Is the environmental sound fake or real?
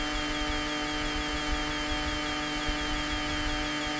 real